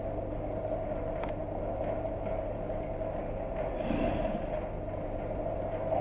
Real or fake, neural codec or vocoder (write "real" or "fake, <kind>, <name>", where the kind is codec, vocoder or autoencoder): real